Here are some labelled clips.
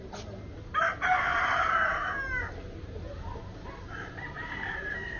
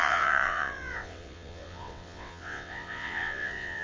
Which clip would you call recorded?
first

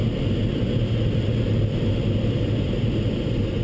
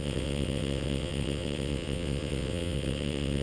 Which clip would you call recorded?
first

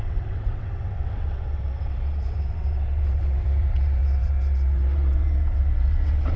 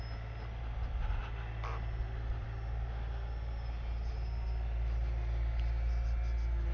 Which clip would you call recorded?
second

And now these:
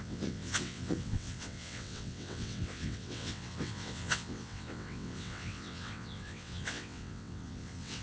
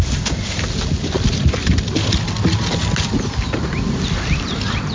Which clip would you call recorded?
second